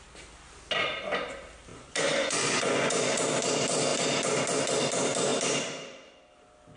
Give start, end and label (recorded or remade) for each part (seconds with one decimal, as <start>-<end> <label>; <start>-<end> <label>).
0.0-1.7 recorded; 1.7-3.2 remade; 3.2-6.8 recorded